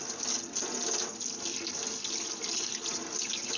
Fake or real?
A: real